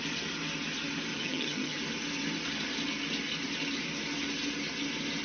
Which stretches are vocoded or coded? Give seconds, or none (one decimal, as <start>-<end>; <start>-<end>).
1.1-1.8